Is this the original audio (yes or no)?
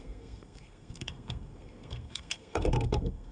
no